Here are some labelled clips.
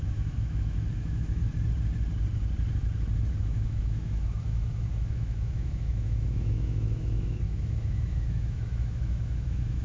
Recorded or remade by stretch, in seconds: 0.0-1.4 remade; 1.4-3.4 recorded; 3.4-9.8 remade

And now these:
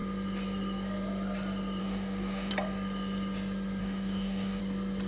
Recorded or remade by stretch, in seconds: 0.0-1.8 recorded; 1.8-2.5 remade; 2.5-3.8 recorded; 3.8-4.6 remade; 4.6-5.1 recorded

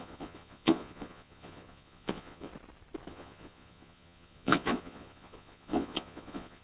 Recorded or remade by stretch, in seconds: 0.0-2.5 remade; 2.5-3.1 recorded; 3.1-6.6 remade